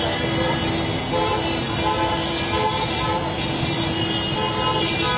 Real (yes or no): yes